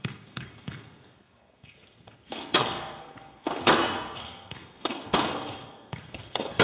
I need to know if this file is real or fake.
fake